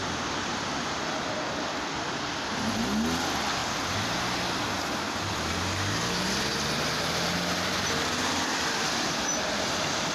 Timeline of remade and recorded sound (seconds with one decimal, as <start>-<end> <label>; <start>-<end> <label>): 0.0-10.1 recorded

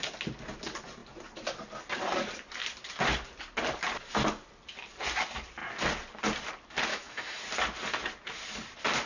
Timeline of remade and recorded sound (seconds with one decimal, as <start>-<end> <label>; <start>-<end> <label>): 0.0-6.9 recorded; 6.9-7.4 remade; 7.4-9.1 recorded

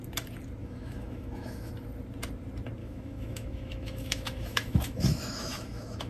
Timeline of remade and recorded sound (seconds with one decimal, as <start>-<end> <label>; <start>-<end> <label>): 0.0-0.6 recorded; 0.6-1.7 remade; 1.7-2.8 recorded; 2.8-6.1 remade

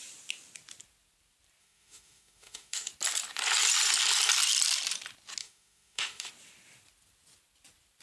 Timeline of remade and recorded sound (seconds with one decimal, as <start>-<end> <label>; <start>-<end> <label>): 0.0-1.6 recorded; 1.6-2.9 remade; 2.9-5.4 recorded; 5.4-6.3 remade; 6.3-8.0 recorded